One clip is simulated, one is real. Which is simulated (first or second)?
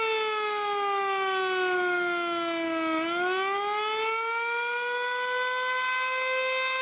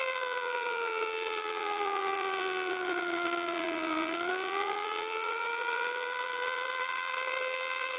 second